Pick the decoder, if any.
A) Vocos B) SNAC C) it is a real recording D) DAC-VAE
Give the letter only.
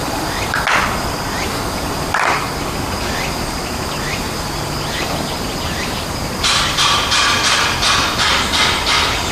C